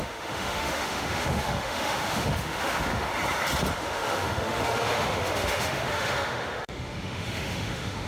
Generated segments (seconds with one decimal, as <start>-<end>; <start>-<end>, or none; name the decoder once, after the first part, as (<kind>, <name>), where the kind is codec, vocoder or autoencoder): 0.0-3.1 (autoencoder, DAC-VAE); 3.8-8.1